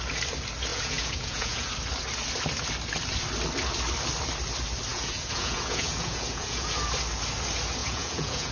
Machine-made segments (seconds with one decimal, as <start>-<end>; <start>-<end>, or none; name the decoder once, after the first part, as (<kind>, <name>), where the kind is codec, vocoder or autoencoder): 0.7-1.7 (vocoder, Vocos); 4.9-6.7; 7.8-8.5